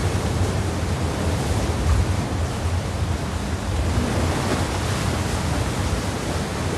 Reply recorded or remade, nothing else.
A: recorded